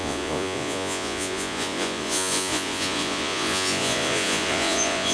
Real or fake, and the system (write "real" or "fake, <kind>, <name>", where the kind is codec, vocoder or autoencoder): fake, vocoder, Vocos